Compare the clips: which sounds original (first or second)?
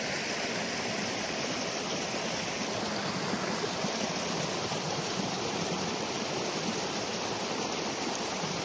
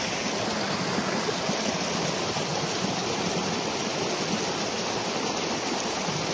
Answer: second